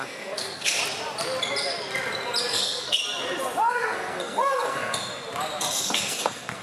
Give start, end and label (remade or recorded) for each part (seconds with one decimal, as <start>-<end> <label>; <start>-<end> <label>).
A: 0.0-0.8 remade; 0.8-2.5 recorded; 2.5-3.0 remade; 3.0-3.7 recorded; 3.7-5.0 remade; 5.0-5.6 recorded; 5.6-6.6 remade